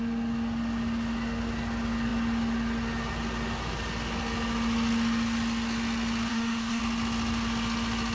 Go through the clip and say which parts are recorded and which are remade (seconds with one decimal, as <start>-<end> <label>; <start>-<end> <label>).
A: 0.0-6.3 recorded; 6.3-6.8 remade; 6.8-8.1 recorded